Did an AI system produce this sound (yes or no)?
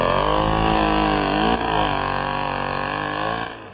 no